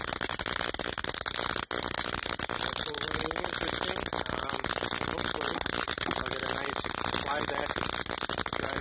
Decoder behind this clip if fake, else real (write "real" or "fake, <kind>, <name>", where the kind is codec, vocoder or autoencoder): real